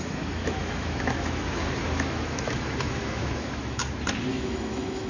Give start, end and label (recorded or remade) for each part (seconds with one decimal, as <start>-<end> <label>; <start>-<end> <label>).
0.0-3.8 remade; 3.8-4.3 recorded; 4.3-5.1 remade